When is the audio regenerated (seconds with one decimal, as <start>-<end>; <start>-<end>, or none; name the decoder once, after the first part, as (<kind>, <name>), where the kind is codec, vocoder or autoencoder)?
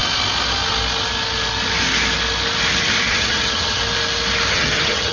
3.1-3.8 (vocoder, HiFi-GAN); 4.5-5.1